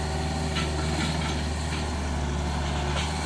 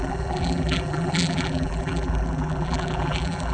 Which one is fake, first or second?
second